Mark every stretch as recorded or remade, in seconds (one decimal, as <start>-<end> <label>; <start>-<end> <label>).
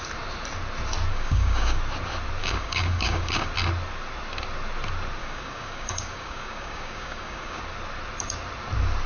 0.0-1.1 recorded; 1.1-1.8 remade; 1.8-2.4 recorded; 2.4-3.5 remade; 3.5-5.2 recorded; 5.2-7.6 remade; 7.6-9.1 recorded